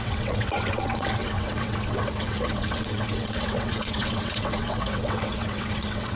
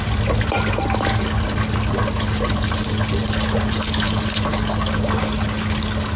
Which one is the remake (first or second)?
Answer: first